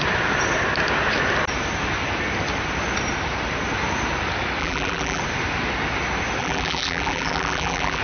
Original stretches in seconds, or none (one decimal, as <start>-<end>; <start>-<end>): 0.0-4.6; 5.2-6.4